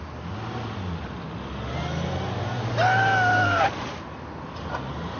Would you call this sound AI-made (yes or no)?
no